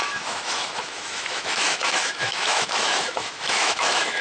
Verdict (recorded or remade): remade